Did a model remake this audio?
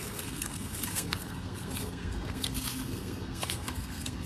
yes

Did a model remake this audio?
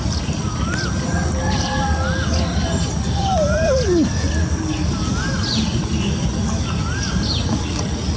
no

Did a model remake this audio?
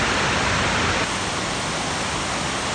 no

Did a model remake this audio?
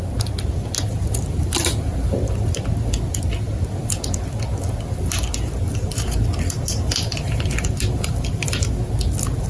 no